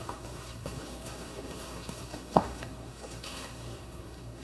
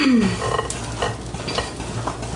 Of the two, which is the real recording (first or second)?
second